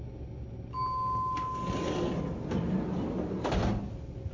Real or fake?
real